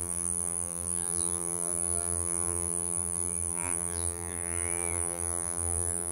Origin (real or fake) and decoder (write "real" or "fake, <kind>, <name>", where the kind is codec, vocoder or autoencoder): fake, vocoder, BigVGAN v2